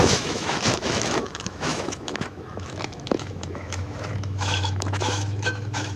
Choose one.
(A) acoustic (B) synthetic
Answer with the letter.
B